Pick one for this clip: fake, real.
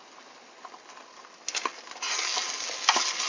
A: real